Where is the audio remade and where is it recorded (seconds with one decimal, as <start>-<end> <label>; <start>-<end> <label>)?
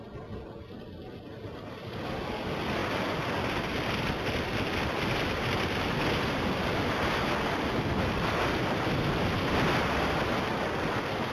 0.0-11.3 recorded